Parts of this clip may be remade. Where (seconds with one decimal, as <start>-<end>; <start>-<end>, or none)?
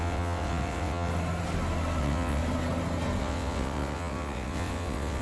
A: 0.0-1.1; 2.0-2.4; 3.2-5.2